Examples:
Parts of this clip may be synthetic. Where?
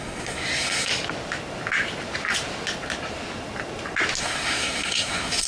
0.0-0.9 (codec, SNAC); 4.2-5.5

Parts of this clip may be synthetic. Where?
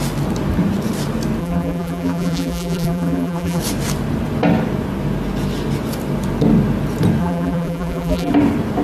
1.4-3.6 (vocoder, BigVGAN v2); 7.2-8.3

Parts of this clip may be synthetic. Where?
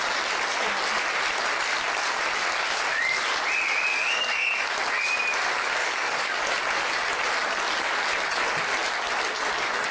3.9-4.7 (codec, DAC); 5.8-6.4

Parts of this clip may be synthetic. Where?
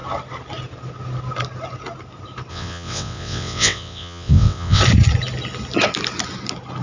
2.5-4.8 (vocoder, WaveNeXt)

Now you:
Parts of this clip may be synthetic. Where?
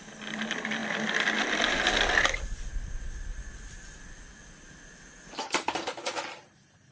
none